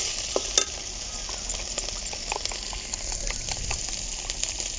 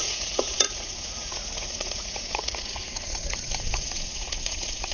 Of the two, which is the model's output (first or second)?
second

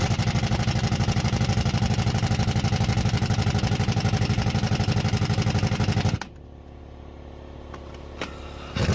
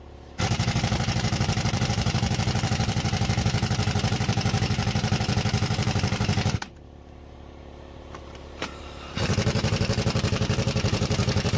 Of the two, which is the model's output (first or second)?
second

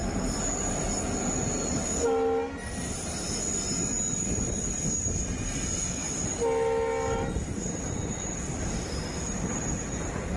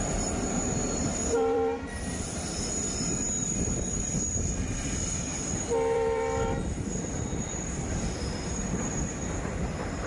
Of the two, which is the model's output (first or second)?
second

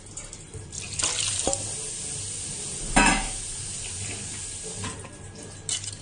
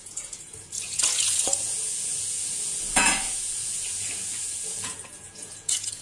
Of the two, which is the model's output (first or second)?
second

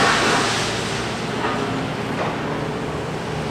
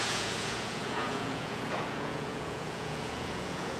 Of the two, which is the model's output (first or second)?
second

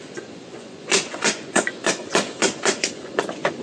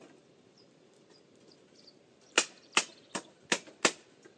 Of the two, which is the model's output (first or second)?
first